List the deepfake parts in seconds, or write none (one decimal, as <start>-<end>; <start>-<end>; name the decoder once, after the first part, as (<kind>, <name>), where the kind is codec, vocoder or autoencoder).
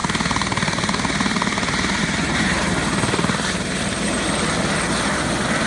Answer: 2.0-2.5 (vocoder, Vocos); 5.1-5.7